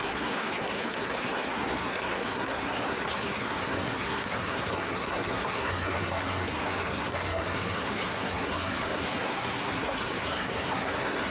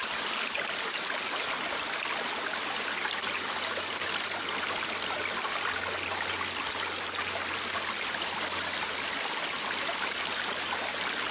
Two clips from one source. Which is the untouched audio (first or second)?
second